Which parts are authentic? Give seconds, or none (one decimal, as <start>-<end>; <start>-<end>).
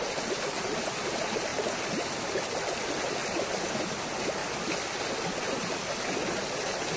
0.0-4.4; 5.1-7.0